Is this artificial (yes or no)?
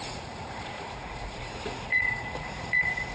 yes